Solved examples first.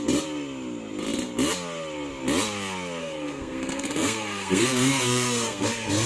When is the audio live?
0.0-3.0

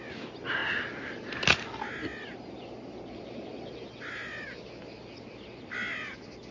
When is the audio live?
0.0-6.5

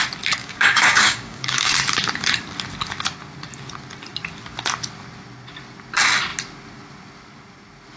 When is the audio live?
0.0-0.4; 1.7-8.0

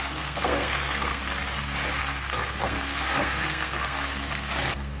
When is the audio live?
1.2-2.0

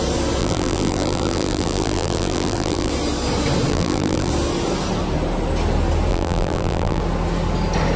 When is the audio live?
0.0-0.4; 2.9-3.7; 4.3-6.1; 7.0-8.0

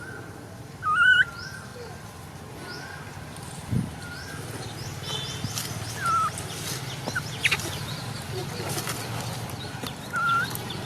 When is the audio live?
0.0-10.9

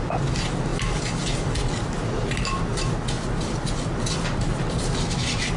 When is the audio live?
0.0-5.6